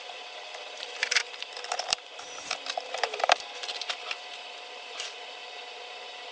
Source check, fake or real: fake